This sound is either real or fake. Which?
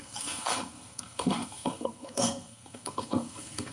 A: fake